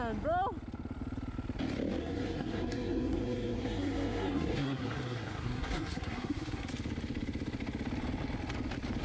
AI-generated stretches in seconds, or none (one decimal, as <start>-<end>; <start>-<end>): 2.0-6.7